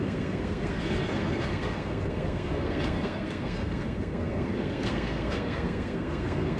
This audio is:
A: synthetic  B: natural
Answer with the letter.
A